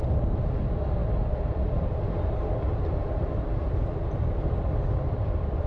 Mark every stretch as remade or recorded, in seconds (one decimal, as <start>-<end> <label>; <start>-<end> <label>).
0.0-5.7 recorded